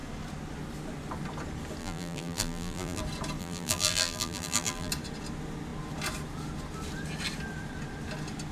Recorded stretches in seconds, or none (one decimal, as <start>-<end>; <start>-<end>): 0.0-1.8; 3.0-3.4; 4.9-8.5